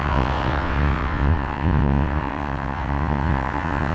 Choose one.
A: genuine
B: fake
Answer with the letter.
B